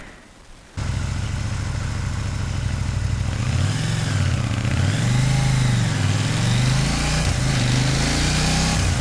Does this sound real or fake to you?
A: real